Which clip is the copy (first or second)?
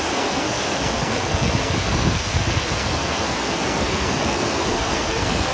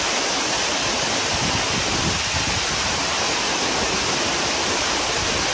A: first